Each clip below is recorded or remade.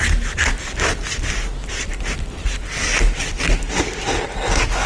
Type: recorded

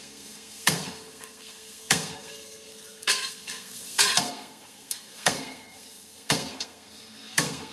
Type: remade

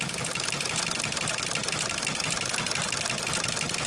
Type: recorded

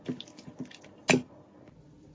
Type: recorded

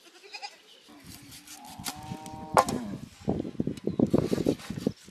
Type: recorded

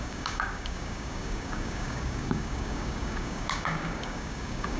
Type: remade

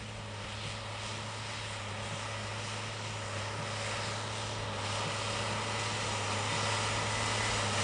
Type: recorded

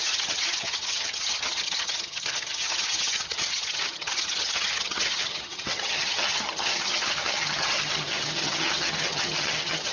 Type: remade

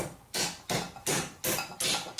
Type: recorded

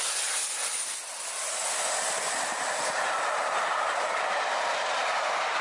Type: recorded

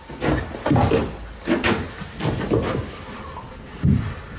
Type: recorded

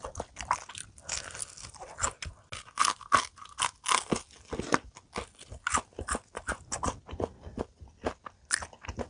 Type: recorded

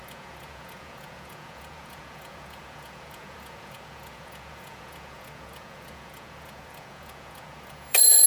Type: remade